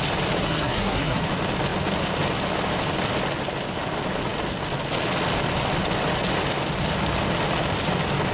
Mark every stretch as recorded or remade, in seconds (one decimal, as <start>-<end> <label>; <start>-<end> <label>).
0.0-0.4 recorded; 0.4-1.2 remade; 1.2-8.3 recorded